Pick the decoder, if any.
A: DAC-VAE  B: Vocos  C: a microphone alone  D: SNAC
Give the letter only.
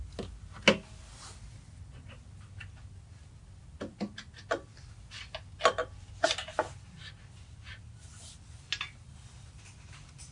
C